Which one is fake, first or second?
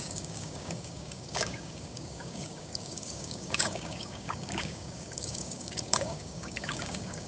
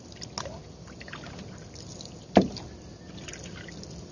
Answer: first